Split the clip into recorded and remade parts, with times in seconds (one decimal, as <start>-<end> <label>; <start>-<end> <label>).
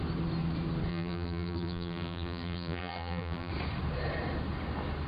0.0-0.9 recorded; 0.9-3.5 remade; 3.5-5.1 recorded